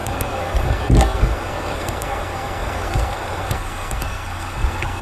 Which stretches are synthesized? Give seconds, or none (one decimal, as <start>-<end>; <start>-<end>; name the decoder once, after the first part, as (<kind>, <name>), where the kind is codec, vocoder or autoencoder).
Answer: 0.0-5.0 (codec, SNAC)